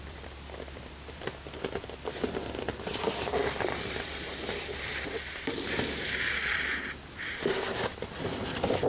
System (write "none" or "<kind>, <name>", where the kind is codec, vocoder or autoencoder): vocoder, BigVGAN v2